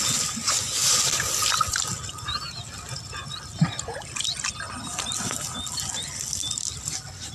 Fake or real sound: real